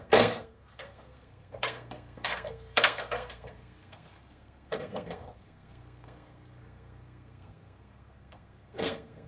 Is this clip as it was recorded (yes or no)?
no